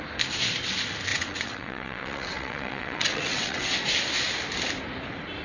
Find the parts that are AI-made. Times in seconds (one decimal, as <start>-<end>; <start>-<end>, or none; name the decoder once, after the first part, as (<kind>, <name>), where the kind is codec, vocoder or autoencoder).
1.1-3.7 (vocoder, WaveNeXt)